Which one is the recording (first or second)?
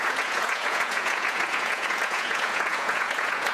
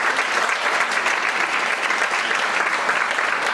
second